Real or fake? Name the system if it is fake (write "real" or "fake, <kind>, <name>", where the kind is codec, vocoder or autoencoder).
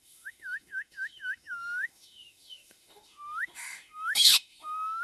fake, autoencoder, DAC-VAE